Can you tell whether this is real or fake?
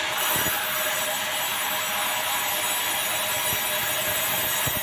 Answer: real